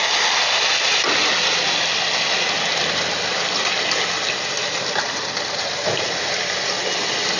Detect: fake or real real